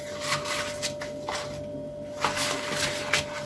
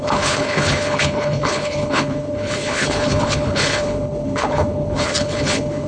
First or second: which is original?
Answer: first